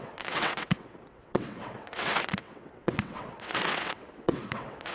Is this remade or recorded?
remade